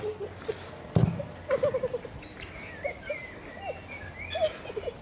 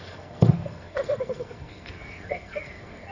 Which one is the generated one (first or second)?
second